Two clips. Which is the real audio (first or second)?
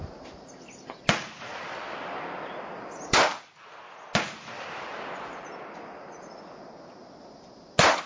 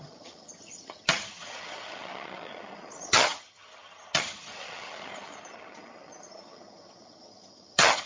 first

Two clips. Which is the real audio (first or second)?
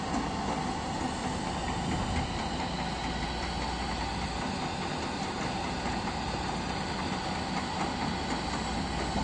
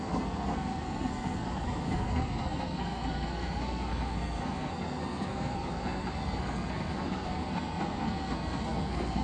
first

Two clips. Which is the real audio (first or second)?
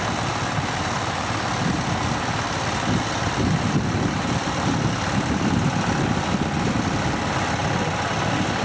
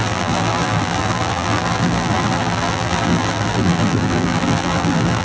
first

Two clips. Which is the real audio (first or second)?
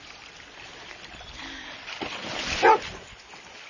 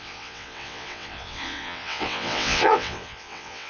first